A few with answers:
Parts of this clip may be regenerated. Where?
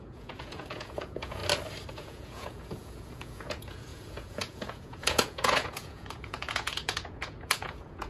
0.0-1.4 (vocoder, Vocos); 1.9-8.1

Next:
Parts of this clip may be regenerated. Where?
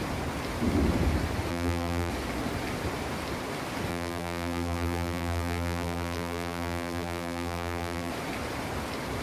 1.5-2.1 (vocoder, BigVGAN v2); 3.9-8.1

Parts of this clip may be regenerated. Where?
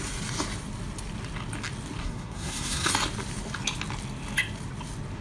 2.0-2.9 (codec, SNAC)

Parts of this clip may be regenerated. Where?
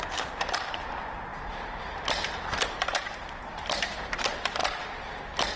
0.0-4.6 (vocoder, BigVGAN v2)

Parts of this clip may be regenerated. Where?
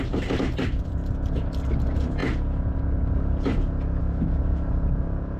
none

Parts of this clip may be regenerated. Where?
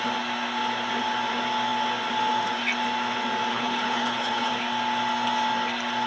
3.5-4.5 (codec, HILCodec)